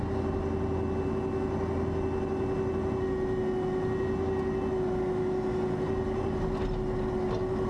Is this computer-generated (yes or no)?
no